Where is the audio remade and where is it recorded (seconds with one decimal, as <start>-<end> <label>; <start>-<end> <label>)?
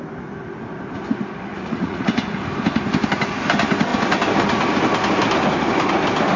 0.0-1.5 recorded; 1.5-2.5 remade; 2.5-6.4 recorded